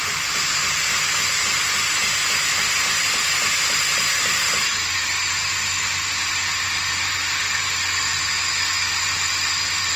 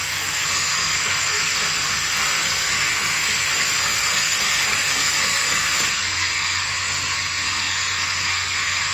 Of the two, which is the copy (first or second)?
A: second